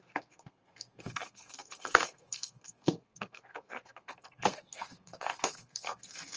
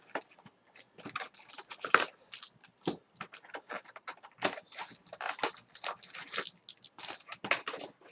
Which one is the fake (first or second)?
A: first